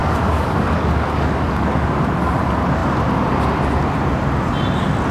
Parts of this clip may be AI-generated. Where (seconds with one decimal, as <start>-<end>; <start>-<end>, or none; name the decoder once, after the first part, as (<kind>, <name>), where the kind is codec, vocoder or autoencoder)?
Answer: 0.0-2.0 (codec, DAC)